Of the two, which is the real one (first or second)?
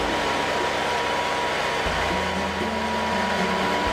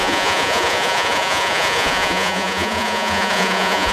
first